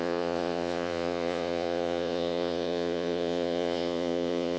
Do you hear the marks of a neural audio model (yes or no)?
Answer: yes